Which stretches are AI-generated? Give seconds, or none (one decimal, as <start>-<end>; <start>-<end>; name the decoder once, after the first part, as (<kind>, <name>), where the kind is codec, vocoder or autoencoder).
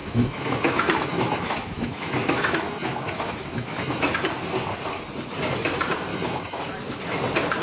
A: 0.0-4.1 (autoencoder, DAC-VAE); 6.1-6.6